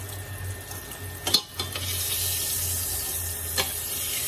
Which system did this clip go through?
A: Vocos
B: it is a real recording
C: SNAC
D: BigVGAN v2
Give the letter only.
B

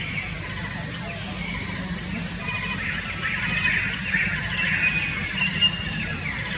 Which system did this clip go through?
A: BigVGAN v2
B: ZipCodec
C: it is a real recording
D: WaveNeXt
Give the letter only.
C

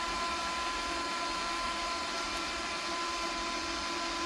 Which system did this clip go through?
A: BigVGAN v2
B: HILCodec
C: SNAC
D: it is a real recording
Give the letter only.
A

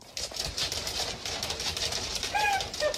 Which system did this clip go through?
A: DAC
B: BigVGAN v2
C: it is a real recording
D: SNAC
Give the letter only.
B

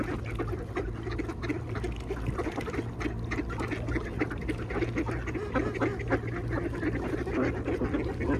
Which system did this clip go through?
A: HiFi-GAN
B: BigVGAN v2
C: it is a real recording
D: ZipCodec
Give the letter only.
C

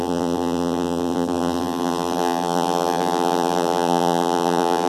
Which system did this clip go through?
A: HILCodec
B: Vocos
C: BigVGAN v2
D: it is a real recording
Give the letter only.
C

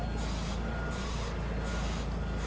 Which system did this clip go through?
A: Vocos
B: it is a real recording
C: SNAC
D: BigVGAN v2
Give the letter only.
B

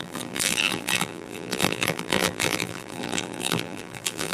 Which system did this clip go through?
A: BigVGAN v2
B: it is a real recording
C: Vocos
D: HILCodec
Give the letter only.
A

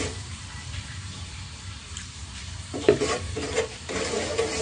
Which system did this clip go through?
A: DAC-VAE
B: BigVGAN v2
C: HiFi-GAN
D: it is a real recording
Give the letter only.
B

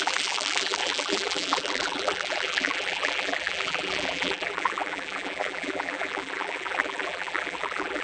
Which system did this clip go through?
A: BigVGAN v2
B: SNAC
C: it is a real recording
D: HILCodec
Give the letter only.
A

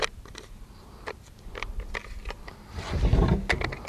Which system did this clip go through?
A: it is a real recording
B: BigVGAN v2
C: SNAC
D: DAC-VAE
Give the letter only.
A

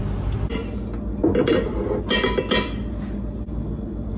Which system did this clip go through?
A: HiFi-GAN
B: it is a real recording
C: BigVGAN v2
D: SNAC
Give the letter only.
B